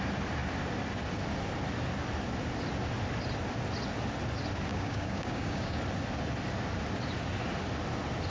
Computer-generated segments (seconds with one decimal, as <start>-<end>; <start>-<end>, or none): 4.7-5.8